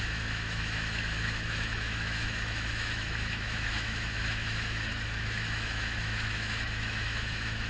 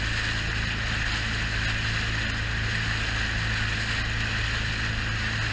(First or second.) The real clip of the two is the second